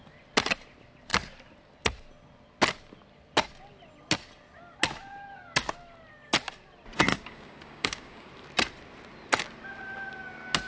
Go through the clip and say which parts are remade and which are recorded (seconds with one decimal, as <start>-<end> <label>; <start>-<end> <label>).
0.0-7.1 recorded; 7.1-8.3 remade; 8.3-10.7 recorded